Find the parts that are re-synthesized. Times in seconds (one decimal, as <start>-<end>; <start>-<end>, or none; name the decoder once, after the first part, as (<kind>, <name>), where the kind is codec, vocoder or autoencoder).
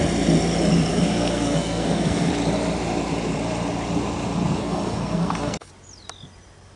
0.9-2.3 (codec, SNAC); 4.6-5.7